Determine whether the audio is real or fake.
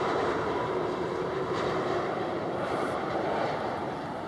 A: fake